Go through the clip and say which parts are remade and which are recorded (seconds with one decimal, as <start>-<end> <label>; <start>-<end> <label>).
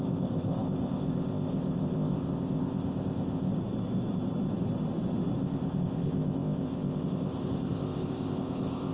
0.0-3.5 remade; 3.5-5.4 recorded; 5.4-8.9 remade